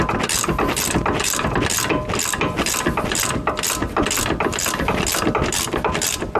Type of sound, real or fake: real